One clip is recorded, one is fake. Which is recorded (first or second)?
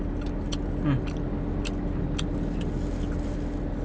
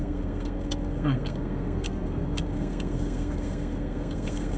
first